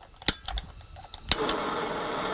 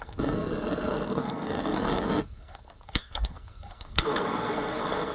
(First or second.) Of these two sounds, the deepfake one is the second